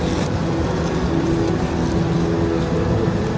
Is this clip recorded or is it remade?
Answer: recorded